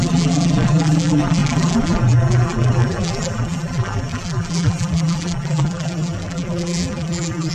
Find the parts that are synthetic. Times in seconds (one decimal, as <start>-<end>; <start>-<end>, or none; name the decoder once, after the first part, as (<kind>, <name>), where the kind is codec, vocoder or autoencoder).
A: 0.0-7.5 (vocoder, BigVGAN v2)